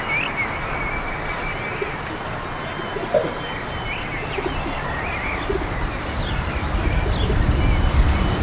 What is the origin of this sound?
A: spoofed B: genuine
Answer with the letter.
B